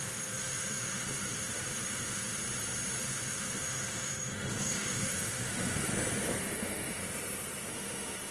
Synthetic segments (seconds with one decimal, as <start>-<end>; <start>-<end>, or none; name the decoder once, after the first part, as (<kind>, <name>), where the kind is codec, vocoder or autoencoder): 0.0-2.4 (autoencoder, DAC-VAE); 3.0-5.9; 6.4-7.0; 7.7-8.3